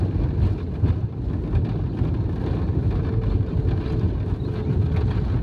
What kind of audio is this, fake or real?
real